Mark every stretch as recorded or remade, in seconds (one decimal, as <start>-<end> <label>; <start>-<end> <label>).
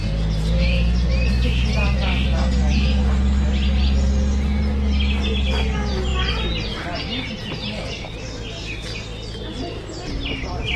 0.0-10.8 recorded